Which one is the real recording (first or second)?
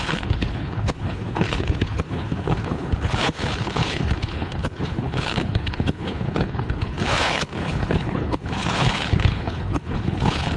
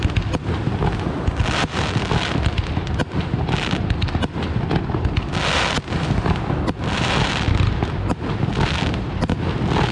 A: second